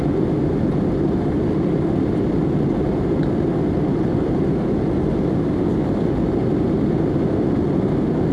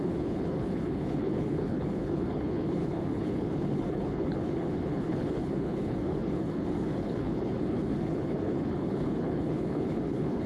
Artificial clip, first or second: second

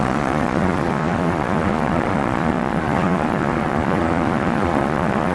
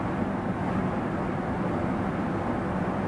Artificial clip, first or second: first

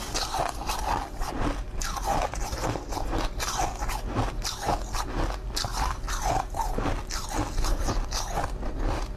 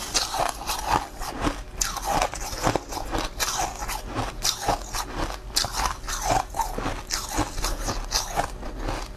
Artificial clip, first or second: first